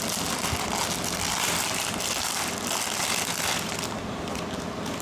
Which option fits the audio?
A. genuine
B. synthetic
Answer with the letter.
A